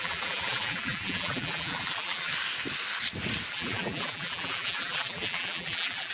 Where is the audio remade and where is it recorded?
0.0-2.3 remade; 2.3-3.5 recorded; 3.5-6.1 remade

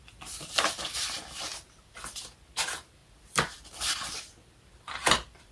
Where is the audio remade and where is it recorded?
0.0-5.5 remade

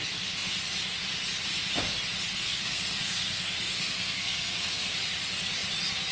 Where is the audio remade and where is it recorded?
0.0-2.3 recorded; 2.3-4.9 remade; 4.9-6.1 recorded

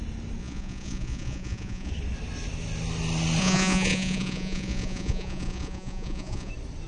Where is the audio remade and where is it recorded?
0.0-0.4 recorded; 0.4-1.9 remade; 1.9-3.4 recorded; 3.4-6.5 remade; 6.5-6.9 recorded